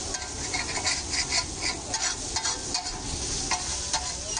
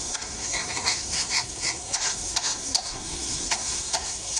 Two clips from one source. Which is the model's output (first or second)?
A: second